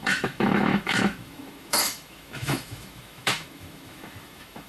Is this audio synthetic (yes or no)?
yes